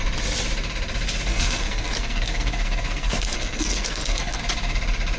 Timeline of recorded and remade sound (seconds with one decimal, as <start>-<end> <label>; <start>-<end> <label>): 0.0-1.3 recorded; 1.3-4.4 remade; 4.4-5.2 recorded